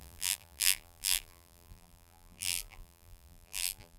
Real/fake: fake